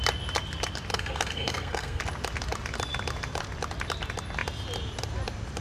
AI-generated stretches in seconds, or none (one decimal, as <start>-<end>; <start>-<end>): 0.9-2.0